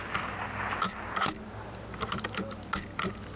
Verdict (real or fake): real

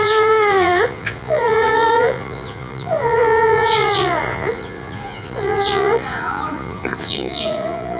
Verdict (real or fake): fake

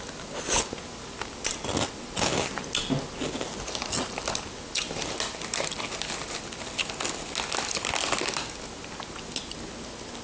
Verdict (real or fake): real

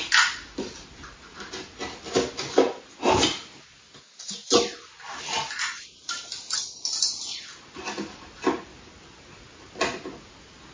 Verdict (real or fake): real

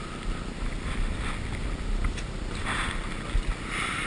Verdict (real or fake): real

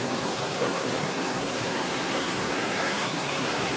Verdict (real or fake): fake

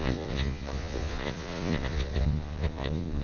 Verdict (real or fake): fake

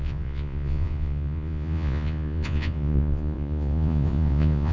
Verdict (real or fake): fake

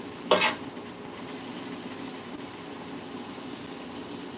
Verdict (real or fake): real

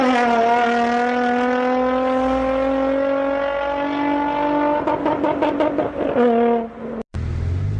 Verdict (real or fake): real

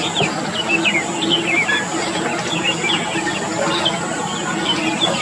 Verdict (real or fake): real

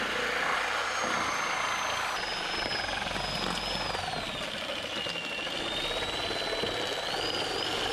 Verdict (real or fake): real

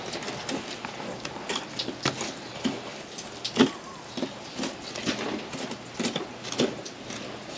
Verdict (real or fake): real